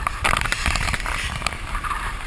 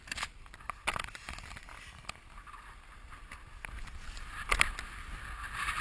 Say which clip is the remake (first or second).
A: first